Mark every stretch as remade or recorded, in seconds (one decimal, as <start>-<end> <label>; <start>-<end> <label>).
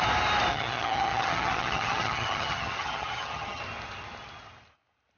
0.0-0.5 recorded; 0.5-3.6 remade; 3.6-5.2 recorded